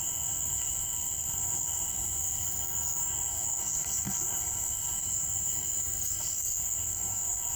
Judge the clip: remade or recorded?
remade